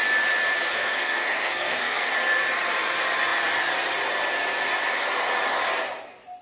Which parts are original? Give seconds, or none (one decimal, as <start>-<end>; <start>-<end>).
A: 0.0-0.7; 2.1-6.4